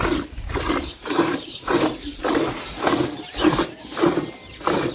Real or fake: fake